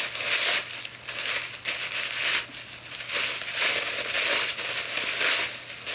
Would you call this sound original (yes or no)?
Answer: yes